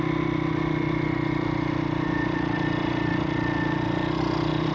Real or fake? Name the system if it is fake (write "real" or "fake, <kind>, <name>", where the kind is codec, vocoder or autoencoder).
real